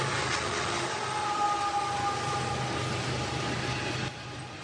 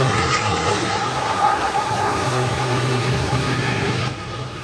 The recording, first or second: first